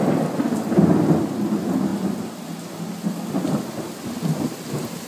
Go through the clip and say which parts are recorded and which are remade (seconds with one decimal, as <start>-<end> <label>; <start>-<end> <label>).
0.0-5.1 recorded